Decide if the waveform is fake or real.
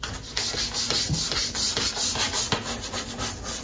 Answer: real